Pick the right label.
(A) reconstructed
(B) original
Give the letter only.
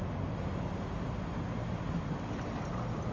B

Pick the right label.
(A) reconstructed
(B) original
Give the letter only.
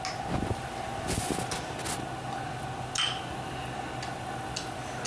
B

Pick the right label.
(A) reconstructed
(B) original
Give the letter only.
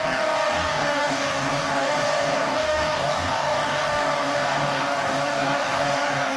A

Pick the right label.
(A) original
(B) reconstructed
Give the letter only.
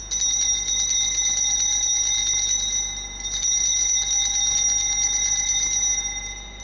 A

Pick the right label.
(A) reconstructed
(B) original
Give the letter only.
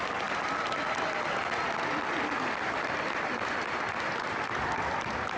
B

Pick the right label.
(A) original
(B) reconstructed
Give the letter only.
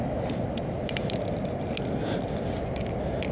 A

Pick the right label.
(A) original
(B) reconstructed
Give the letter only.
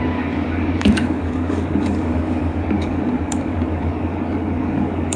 B